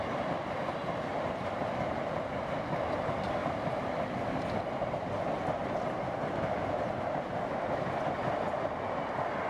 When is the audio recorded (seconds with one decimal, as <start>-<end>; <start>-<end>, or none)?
0.0-1.1; 1.7-3.4; 4.0-5.6; 6.2-9.5